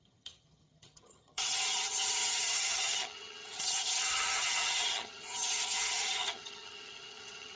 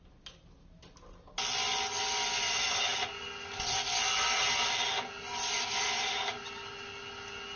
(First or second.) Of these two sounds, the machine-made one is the first